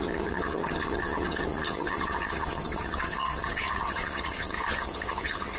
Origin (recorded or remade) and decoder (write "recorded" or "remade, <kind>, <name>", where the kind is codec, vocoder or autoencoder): remade, vocoder, HiFi-GAN